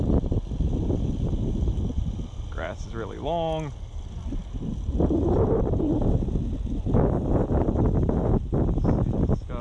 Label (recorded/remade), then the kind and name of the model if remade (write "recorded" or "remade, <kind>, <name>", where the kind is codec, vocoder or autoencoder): recorded